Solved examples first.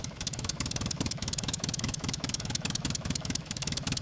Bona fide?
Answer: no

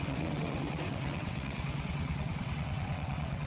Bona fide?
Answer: no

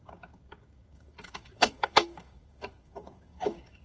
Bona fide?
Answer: no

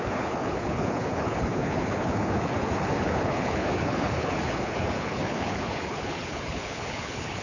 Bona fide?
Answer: no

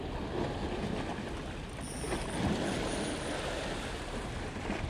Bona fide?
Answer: yes